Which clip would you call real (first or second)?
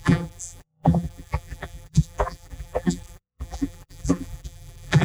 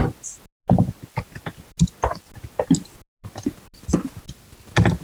second